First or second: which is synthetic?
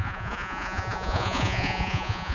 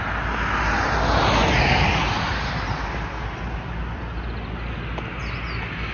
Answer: first